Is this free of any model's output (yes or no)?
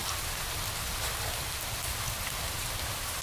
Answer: yes